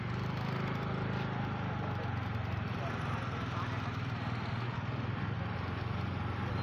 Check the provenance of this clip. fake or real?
real